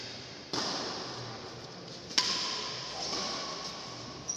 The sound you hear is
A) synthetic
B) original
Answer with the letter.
B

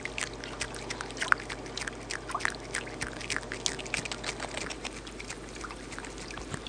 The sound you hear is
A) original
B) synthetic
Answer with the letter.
A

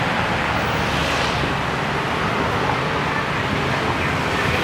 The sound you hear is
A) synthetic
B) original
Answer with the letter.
B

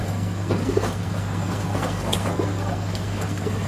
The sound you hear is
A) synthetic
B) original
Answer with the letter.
A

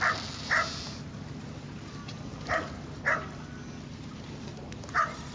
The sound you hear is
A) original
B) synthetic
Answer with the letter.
A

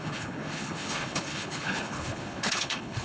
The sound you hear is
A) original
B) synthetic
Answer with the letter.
B